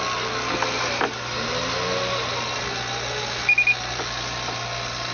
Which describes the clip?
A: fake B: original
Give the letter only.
B